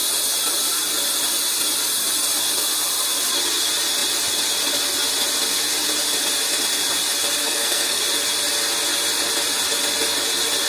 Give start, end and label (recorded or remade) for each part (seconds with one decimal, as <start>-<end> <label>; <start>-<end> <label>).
0.0-7.4 recorded; 7.4-8.0 remade; 8.0-10.7 recorded